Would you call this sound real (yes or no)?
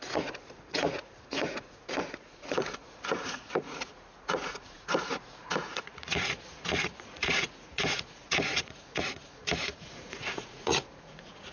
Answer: no